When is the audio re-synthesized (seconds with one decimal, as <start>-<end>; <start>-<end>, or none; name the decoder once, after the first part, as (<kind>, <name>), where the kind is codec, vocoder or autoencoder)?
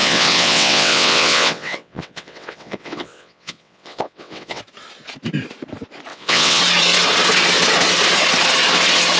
0.0-4.6 (vocoder, WaveNeXt); 6.1-6.6